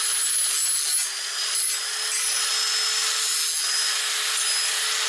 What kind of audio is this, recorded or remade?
recorded